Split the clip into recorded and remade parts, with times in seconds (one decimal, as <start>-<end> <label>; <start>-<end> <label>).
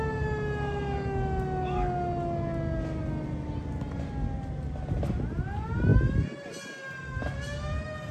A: 0.0-8.1 recorded